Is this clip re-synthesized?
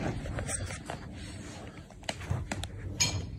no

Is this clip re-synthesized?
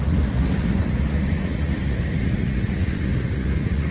yes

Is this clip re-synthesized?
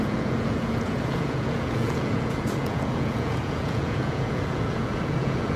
yes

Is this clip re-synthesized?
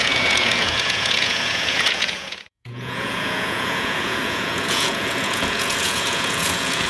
yes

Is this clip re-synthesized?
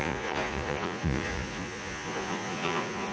yes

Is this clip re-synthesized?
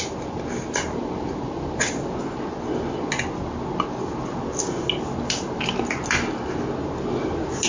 no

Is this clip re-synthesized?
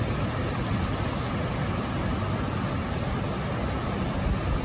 no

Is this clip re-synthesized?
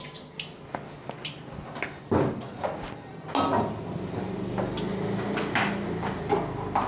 no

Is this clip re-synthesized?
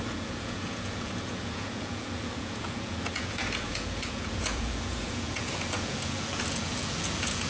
yes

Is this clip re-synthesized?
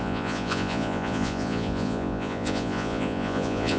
yes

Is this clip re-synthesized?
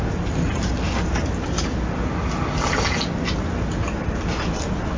no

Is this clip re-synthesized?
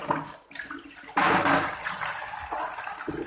no